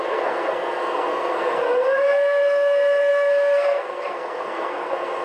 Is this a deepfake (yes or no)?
yes